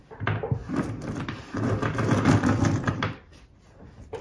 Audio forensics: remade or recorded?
recorded